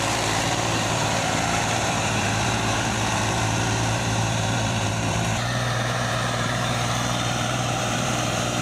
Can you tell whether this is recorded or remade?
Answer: remade